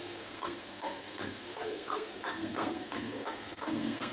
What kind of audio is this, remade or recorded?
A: remade